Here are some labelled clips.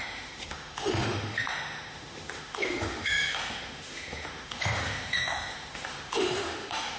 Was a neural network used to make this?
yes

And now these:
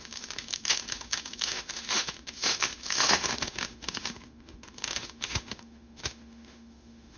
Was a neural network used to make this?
yes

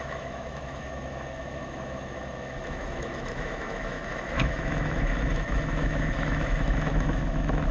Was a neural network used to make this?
yes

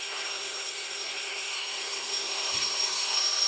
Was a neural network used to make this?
yes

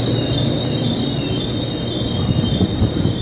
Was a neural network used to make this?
no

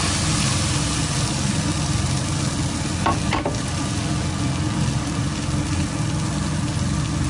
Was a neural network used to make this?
no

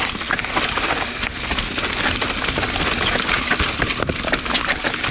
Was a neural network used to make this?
no